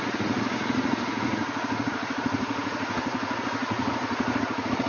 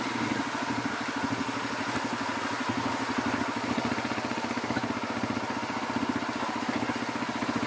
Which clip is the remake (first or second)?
first